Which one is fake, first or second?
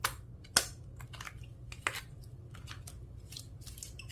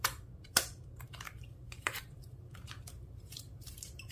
second